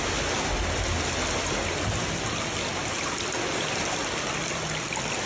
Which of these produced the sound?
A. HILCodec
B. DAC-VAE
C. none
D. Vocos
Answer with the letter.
C